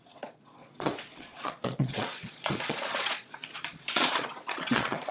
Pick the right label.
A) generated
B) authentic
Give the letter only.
A